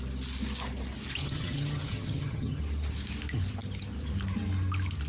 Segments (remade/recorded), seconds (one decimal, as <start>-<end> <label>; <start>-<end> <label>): 0.0-1.2 recorded; 1.2-2.6 remade; 2.6-5.1 recorded